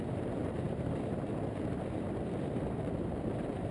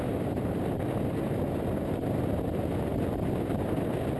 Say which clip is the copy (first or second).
first